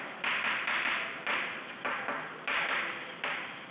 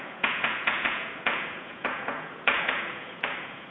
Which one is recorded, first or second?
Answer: first